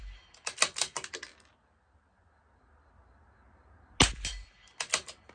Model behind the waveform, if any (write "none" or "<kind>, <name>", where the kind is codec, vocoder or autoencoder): none